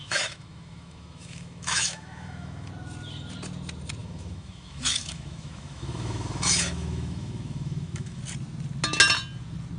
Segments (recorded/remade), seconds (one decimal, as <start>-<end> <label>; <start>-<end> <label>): 0.0-2.7 remade; 2.7-4.0 recorded; 4.0-8.2 remade; 8.2-9.8 recorded